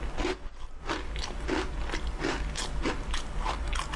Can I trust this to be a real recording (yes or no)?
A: yes